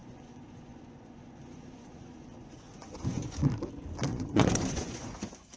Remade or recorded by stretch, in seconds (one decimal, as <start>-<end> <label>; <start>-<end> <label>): 0.0-3.4 remade; 3.4-4.1 recorded; 4.1-5.6 remade